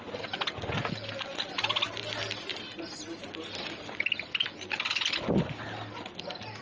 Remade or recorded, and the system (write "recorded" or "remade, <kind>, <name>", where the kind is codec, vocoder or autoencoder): recorded